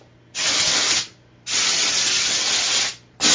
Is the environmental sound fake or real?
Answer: real